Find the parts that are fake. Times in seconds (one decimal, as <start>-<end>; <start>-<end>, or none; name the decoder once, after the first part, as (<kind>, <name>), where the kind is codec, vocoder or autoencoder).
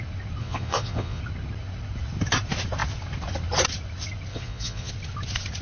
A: 0.4-1.2 (vocoder, Vocos); 4.3-4.9